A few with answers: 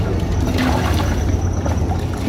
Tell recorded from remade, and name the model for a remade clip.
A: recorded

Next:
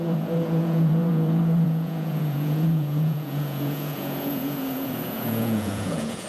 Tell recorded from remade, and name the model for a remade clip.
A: remade, vocoder, Vocos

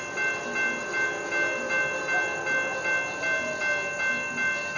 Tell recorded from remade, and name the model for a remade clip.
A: recorded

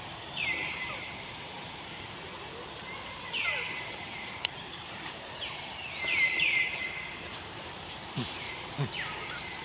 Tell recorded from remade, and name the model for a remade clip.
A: remade, vocoder, BigVGAN v2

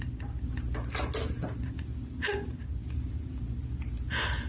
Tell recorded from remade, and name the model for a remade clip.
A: recorded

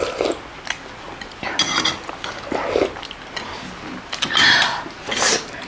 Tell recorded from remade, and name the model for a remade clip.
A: recorded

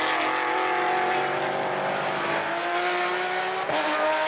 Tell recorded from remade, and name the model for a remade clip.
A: recorded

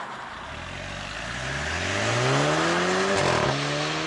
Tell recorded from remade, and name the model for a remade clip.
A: recorded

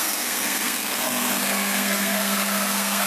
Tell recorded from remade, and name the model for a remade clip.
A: remade, codec, SNAC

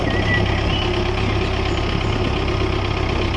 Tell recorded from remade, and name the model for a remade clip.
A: recorded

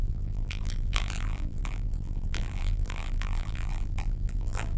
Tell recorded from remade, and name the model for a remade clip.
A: remade, vocoder, BigVGAN v2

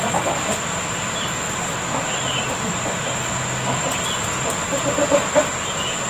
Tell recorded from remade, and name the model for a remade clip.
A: recorded